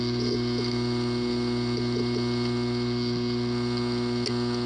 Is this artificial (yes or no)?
no